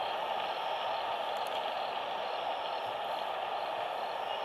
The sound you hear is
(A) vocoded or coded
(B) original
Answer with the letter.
B